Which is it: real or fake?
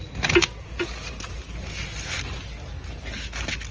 real